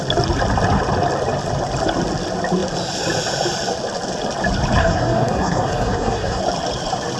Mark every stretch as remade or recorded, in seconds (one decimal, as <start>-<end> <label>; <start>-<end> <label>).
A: 0.0-4.8 recorded; 4.8-6.4 remade; 6.4-7.2 recorded